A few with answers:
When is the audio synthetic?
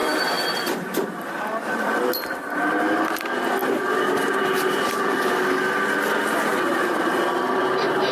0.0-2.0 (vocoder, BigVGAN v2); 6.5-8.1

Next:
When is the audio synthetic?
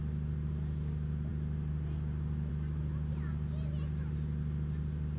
none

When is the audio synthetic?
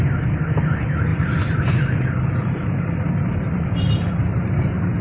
0.0-5.0 (vocoder, BigVGAN v2)